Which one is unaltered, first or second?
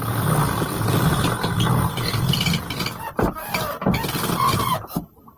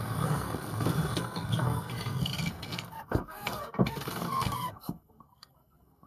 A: first